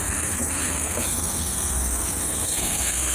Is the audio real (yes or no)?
no